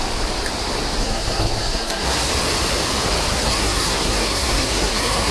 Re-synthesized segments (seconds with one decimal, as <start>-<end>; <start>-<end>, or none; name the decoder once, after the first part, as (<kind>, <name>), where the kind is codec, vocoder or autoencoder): 1.0-2.3 (codec, SNAC); 3.3-5.3